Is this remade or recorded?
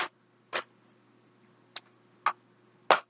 recorded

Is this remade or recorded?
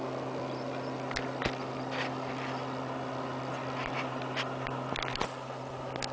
recorded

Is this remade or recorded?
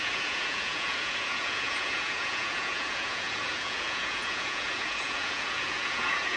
remade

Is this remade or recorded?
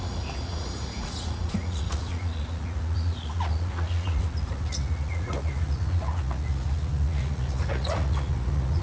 remade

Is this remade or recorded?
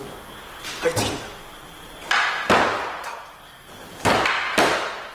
recorded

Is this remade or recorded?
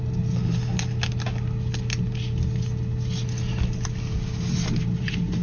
recorded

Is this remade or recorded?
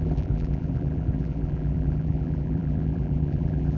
remade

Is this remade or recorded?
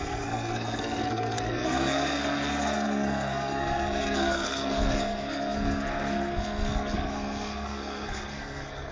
remade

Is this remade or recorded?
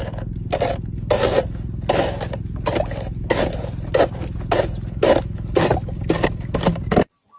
recorded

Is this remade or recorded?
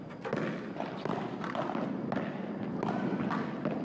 recorded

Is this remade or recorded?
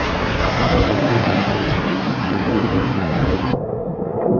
remade